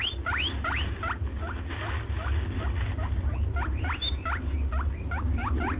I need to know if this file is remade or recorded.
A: recorded